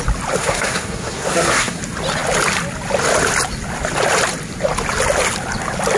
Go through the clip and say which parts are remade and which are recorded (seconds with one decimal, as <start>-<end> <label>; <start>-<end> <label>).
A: 0.0-0.4 recorded; 0.4-1.8 remade; 1.8-6.0 recorded